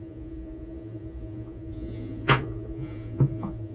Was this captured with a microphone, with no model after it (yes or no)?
no